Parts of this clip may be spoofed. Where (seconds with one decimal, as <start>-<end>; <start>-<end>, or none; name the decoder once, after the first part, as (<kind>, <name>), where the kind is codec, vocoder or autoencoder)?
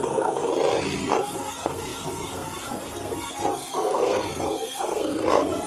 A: 0.0-0.5 (codec, SNAC); 1.1-5.7